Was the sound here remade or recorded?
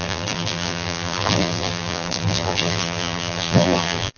remade